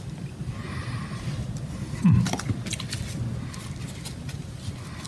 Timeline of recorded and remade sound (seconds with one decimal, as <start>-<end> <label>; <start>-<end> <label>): 0.0-5.1 recorded